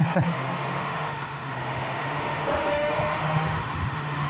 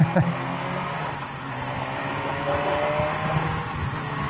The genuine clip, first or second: second